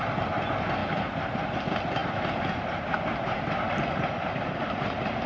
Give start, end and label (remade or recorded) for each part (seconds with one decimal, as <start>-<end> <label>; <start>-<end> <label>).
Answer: 0.0-5.3 recorded